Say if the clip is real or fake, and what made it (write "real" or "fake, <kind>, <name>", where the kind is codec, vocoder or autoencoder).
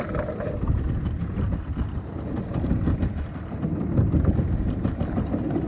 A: fake, vocoder, BigVGAN v2